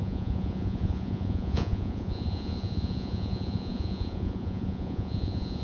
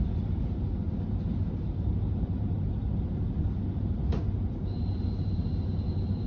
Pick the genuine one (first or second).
second